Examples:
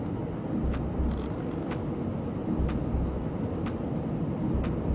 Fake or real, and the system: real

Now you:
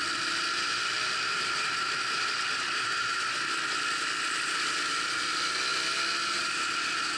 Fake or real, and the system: real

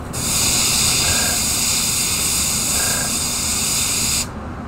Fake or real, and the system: real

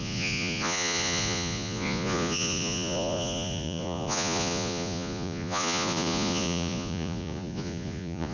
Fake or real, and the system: fake, vocoder, Vocos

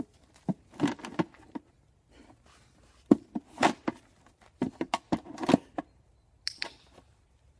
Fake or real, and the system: real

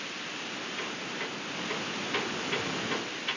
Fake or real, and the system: real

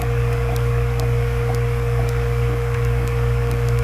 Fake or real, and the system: fake, codec, DAC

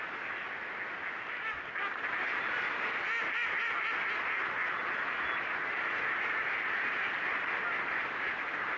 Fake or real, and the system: real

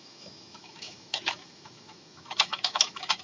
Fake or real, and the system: fake, autoencoder, DAC-VAE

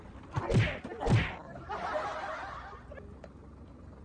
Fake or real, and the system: real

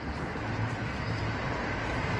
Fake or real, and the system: real